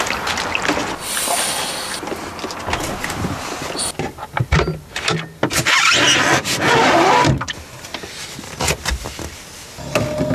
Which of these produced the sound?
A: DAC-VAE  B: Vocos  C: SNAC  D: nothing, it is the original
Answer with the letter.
D